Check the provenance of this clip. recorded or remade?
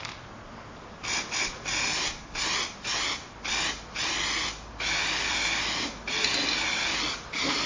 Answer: recorded